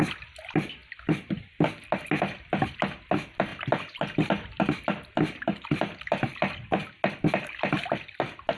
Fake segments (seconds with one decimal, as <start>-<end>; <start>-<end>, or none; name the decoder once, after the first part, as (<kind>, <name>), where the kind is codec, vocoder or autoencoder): 0.8-1.9 (vocoder, BigVGAN v2)